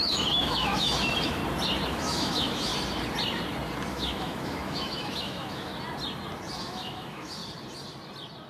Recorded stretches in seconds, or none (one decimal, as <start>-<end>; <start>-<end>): 1.4-1.9; 2.7-3.9; 5.7-6.6; 7.4-8.5